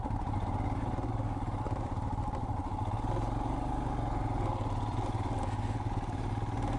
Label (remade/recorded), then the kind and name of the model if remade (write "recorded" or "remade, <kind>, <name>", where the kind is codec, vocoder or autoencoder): recorded